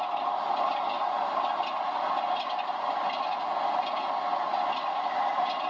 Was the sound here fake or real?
real